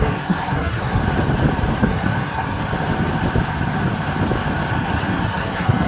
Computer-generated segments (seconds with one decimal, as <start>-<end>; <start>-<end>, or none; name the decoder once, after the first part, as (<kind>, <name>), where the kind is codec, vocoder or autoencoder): 0.0-1.0 (codec, SNAC); 1.8-2.6; 4.7-5.9